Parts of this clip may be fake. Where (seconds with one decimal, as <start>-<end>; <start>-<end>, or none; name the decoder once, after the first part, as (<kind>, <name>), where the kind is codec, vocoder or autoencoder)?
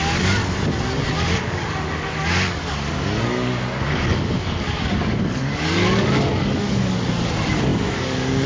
0.0-0.4 (codec, DAC); 1.3-8.5